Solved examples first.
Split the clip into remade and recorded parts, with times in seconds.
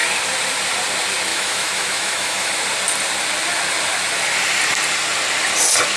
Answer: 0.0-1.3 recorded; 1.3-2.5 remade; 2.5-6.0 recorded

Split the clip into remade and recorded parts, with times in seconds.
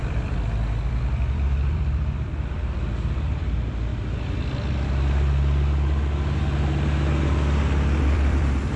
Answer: 0.0-3.9 remade; 3.9-8.0 recorded; 8.0-8.8 remade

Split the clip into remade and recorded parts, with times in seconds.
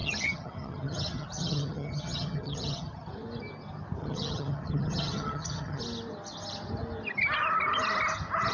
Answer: 0.0-3.1 remade; 3.1-4.0 recorded; 4.0-5.8 remade; 5.8-8.5 recorded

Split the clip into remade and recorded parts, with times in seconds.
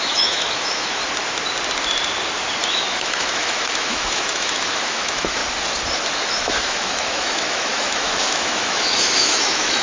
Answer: 0.0-1.0 remade; 1.0-2.7 recorded; 2.7-5.4 remade; 5.4-6.1 recorded; 6.1-9.8 remade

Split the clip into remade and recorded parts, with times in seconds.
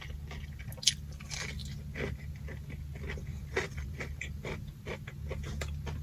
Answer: 0.0-3.3 recorded; 3.3-4.8 remade; 4.8-6.0 recorded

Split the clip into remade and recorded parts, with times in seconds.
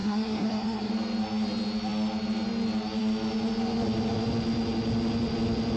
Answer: 0.0-0.9 remade; 0.9-5.8 recorded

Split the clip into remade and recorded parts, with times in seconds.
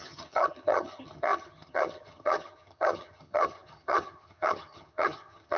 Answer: 0.0-5.6 remade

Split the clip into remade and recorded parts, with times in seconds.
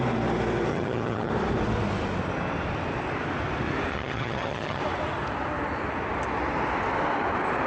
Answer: 0.0-0.7 recorded; 0.7-1.3 remade; 1.3-3.9 recorded; 3.9-4.8 remade; 4.8-7.7 recorded